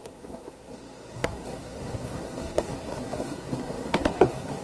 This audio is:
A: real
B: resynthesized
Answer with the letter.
B